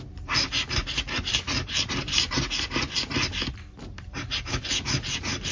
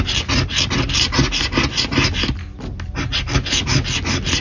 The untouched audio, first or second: second